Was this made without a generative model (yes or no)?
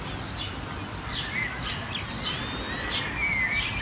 yes